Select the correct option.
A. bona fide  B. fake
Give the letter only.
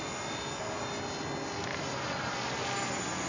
A